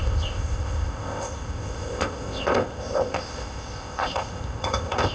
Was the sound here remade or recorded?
remade